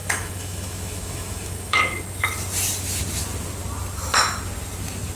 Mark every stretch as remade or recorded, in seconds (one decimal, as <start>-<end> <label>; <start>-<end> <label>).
0.0-1.8 remade; 1.8-5.2 recorded